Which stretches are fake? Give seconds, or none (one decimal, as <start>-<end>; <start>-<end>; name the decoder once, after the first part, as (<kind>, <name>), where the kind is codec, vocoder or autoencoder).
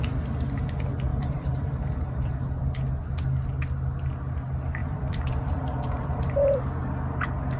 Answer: 1.1-2.4 (vocoder, BigVGAN v2); 4.8-6.3